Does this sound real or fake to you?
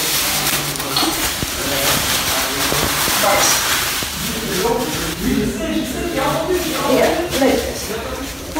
fake